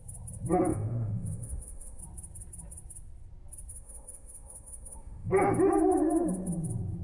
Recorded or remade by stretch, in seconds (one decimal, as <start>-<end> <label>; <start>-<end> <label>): 0.0-0.7 recorded; 0.7-2.0 remade; 2.0-3.7 recorded; 3.7-5.3 remade; 5.3-7.0 recorded